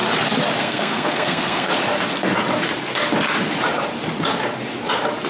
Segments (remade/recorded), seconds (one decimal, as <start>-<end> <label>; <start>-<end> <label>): 0.0-0.6 recorded; 0.6-1.7 remade; 1.7-5.3 recorded